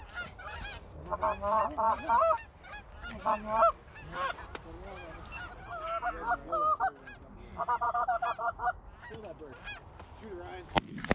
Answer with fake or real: real